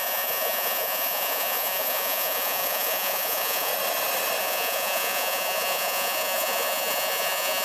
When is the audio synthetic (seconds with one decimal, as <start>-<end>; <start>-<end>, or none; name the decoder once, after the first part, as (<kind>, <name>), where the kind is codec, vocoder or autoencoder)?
0.0-3.7 (vocoder, Vocos); 4.4-7.6